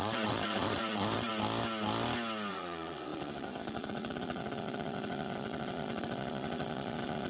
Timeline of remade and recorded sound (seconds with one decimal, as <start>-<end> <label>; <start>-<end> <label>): 0.0-1.3 remade; 1.3-2.5 recorded; 2.5-7.3 remade

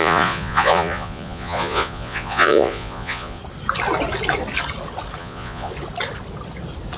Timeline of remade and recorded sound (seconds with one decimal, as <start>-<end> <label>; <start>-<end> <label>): 0.0-3.4 remade; 3.4-5.2 recorded; 5.2-5.7 remade; 5.7-7.0 recorded

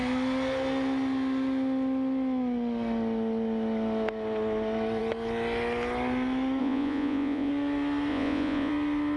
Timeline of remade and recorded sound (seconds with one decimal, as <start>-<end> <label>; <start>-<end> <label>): 0.0-6.6 recorded; 6.6-7.5 remade; 7.5-8.1 recorded; 8.1-8.7 remade; 8.7-9.2 recorded

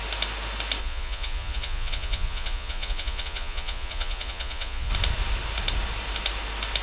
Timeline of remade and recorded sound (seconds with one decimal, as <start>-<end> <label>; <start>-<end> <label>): 0.0-0.8 recorded; 0.8-4.9 remade; 4.9-6.8 recorded

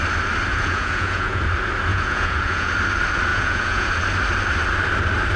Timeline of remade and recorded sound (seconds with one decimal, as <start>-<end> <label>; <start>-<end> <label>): 0.0-0.5 recorded; 0.5-1.4 remade; 1.4-1.9 recorded; 1.9-2.7 remade; 2.7-3.3 recorded; 3.3-3.9 remade; 3.9-5.4 recorded

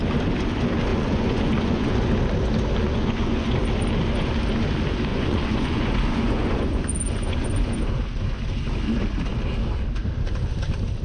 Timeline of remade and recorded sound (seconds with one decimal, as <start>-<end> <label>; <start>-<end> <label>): 0.0-0.9 recorded; 0.9-2.0 remade; 2.0-2.8 recorded; 2.8-3.6 remade; 3.6-5.1 recorded; 5.1-7.8 remade; 7.8-11.0 recorded